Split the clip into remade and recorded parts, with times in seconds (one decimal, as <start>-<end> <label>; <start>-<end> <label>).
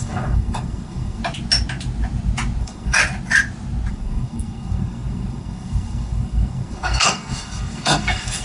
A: 0.0-1.2 remade; 1.2-2.6 recorded; 2.6-3.0 remade; 3.0-3.9 recorded; 3.9-8.4 remade